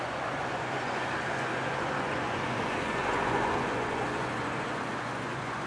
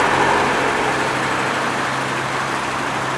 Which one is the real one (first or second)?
second